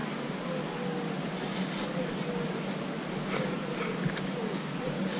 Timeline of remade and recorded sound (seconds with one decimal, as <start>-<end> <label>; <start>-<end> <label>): 0.0-5.2 recorded